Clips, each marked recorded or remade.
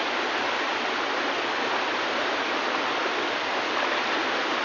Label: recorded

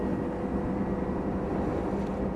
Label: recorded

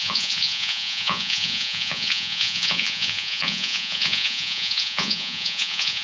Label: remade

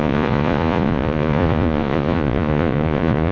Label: remade